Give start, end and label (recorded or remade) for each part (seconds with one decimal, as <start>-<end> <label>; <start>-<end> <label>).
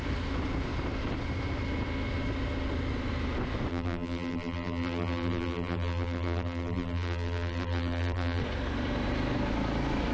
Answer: 0.0-3.7 recorded; 3.7-8.4 remade; 8.4-10.1 recorded